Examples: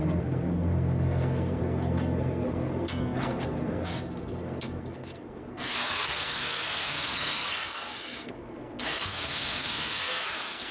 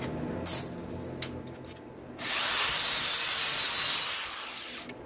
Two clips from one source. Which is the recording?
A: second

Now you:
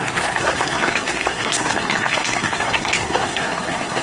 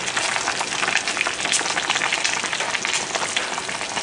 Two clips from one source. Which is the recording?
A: second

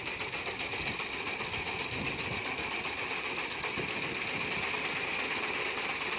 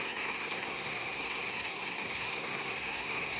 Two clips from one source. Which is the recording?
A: first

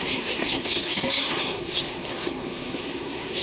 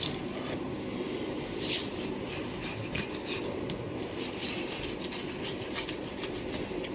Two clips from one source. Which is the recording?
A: second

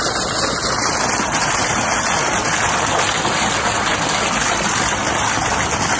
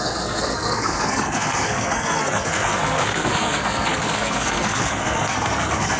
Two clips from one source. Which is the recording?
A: first